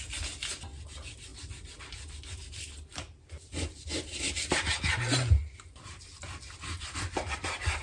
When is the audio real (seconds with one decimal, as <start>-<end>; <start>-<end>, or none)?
0.0-7.8